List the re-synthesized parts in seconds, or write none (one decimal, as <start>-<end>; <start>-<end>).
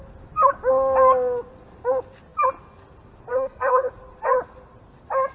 3.3-3.9